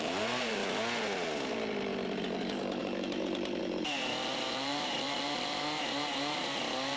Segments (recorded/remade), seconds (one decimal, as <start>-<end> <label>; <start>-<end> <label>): 0.0-0.6 remade; 0.6-1.5 recorded; 1.5-7.0 remade